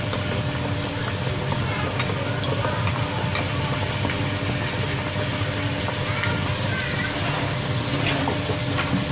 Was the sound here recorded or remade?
recorded